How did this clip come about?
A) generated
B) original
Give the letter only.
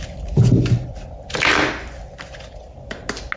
B